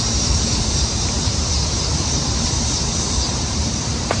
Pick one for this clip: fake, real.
fake